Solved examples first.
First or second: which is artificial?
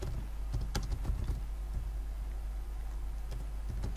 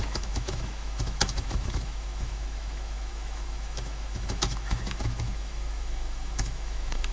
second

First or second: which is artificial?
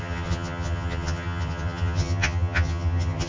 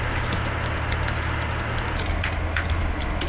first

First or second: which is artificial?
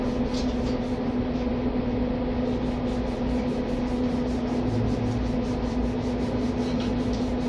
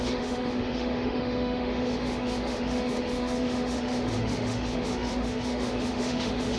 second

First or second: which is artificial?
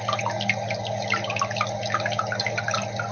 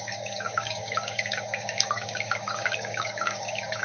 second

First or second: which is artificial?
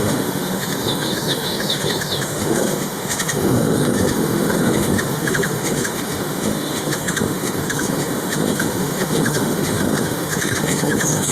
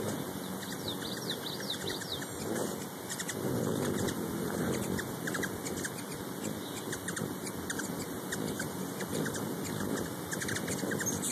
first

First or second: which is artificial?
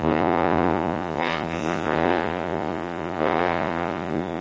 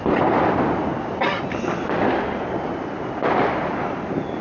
first